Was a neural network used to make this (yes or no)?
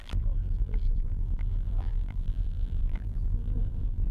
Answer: yes